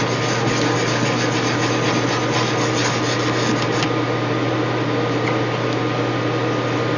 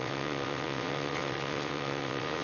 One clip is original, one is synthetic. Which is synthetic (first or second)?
second